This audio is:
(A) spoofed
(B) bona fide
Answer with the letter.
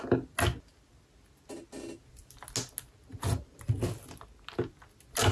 B